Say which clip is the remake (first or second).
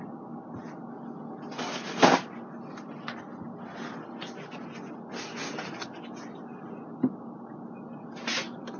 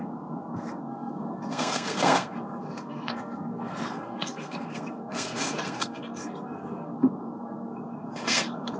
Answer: second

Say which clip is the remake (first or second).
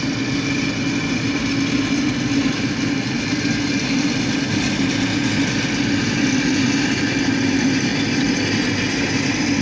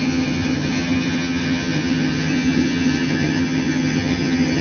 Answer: second